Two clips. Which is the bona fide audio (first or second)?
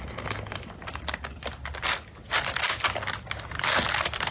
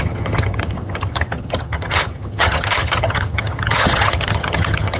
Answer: first